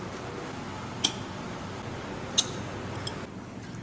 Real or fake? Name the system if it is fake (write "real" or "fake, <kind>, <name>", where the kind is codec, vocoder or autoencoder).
real